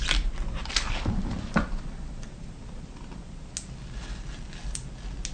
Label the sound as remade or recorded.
recorded